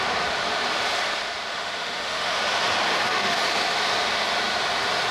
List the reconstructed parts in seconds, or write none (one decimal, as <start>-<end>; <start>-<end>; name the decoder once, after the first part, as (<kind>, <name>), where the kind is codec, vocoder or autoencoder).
1.5-2.4 (autoencoder, DAC-VAE); 2.9-3.4